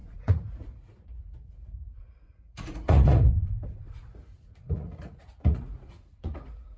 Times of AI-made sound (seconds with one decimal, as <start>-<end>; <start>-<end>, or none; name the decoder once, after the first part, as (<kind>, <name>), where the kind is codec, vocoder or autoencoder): 0.0-6.8 (vocoder, Vocos)